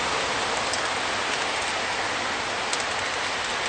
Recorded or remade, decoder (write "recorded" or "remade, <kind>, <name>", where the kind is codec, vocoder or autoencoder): recorded